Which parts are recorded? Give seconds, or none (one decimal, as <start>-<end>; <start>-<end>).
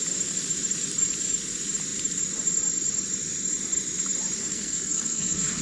0.0-4.4